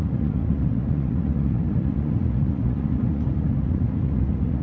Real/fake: fake